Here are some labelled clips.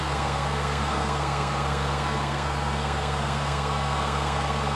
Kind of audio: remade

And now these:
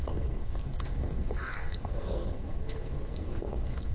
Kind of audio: remade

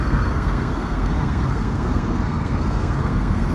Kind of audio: remade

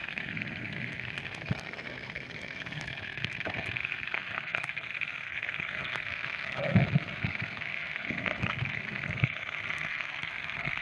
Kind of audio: remade